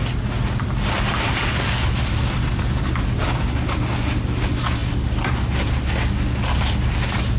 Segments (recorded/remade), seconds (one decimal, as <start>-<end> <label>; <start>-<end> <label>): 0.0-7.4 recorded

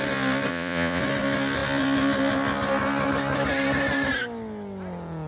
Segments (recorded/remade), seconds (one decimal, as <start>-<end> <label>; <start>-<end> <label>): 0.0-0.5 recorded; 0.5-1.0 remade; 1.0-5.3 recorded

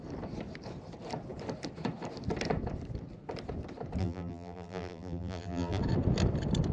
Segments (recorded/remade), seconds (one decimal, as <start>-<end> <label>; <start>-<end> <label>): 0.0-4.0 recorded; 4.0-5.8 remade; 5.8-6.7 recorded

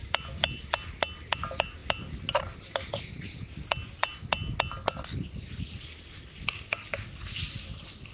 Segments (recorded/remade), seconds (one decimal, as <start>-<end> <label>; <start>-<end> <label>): 0.0-8.1 recorded

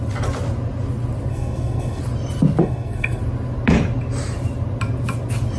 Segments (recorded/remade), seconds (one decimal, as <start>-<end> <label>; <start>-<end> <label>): 0.0-1.3 recorded; 1.3-2.0 remade; 2.0-2.6 recorded; 2.6-3.2 remade; 3.2-5.6 recorded

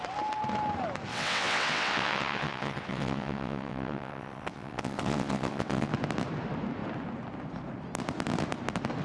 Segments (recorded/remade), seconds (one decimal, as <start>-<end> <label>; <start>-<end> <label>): 0.0-1.1 recorded; 1.1-5.9 remade; 5.9-9.0 recorded